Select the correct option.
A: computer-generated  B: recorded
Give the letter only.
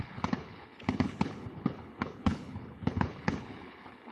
A